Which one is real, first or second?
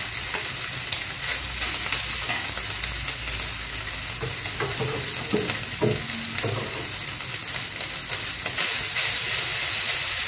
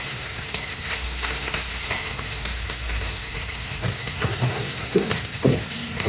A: first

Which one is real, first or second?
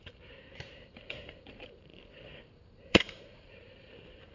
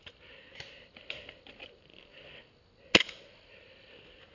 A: second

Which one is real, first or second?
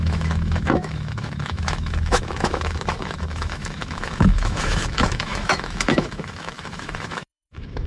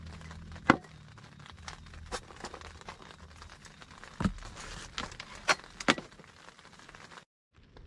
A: second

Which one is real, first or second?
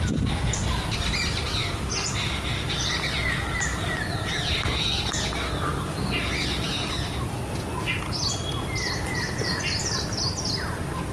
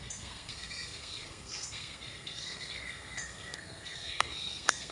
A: first